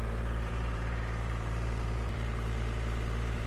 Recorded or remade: remade